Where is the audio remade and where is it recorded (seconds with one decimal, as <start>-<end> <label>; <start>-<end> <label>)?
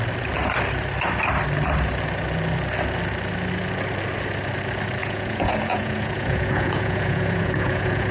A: 0.0-5.0 recorded; 5.0-8.1 remade